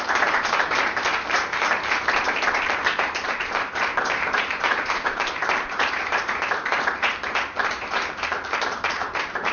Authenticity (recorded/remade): remade